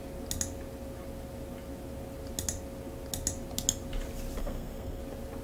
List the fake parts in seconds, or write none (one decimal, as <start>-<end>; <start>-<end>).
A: 4.4-5.0